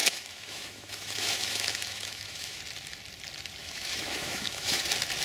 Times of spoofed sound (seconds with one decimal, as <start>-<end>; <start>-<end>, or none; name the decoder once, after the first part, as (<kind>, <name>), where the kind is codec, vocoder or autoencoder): 0.0-2.6 (autoencoder, DAC-VAE); 3.6-4.8